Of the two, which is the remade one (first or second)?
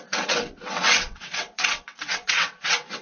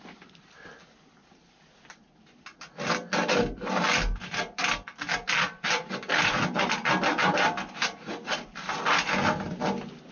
first